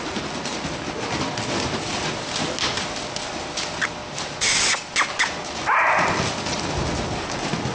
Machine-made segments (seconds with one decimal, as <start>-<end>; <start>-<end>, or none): none